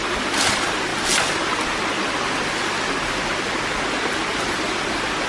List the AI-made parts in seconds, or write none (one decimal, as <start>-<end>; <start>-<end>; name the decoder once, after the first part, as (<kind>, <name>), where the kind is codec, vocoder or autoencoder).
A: none